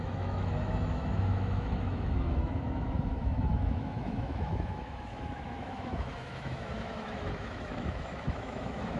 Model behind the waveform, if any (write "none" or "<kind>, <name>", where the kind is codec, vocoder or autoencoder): autoencoder, DAC-VAE